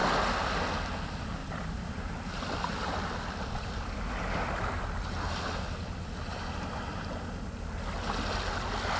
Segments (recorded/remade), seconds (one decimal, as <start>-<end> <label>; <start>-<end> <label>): 0.0-1.4 recorded; 1.4-5.3 remade; 5.3-9.0 recorded